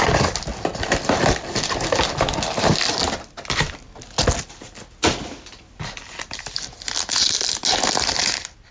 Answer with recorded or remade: recorded